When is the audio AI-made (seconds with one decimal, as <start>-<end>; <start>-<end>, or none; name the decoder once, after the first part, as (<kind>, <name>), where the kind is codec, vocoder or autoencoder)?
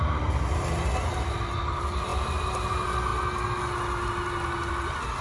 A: none